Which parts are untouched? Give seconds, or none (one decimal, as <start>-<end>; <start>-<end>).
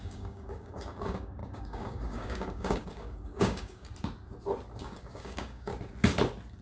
3.9-4.8; 5.7-6.6